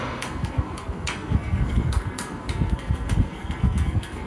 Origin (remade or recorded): remade